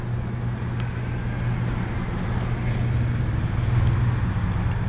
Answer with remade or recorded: recorded